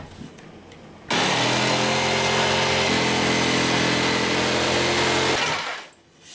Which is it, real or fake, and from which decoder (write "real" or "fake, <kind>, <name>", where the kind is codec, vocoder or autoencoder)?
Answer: real